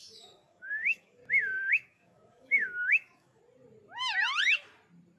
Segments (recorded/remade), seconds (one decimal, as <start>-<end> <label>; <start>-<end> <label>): 0.0-1.2 remade; 1.2-1.7 recorded; 1.7-3.4 remade; 3.4-5.2 recorded